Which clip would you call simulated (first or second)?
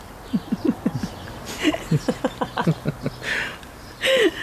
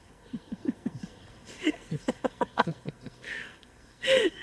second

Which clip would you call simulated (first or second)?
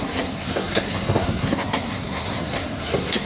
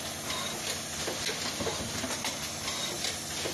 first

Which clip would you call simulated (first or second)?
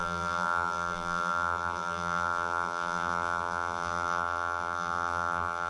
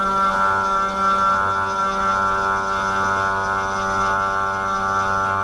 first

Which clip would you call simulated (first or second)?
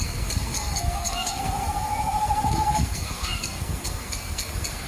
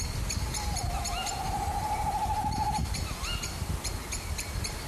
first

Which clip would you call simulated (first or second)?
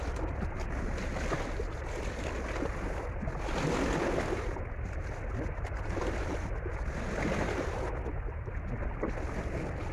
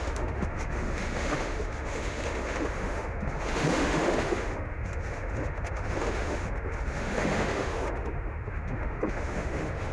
second